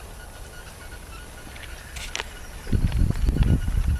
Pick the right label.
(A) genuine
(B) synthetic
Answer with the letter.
A